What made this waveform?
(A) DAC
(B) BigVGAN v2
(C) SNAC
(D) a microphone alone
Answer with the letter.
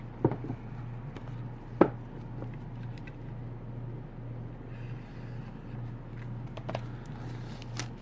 D